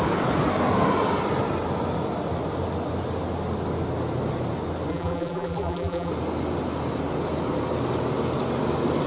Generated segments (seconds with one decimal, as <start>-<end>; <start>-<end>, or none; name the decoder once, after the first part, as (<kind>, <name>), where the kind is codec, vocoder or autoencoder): 4.9-6.1 (vocoder, BigVGAN v2)